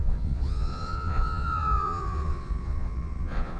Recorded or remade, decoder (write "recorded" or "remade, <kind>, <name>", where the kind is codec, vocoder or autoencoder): remade, vocoder, Vocos